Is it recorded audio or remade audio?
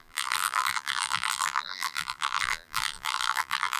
remade